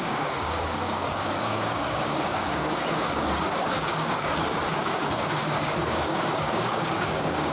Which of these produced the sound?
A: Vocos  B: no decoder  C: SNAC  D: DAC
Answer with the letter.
D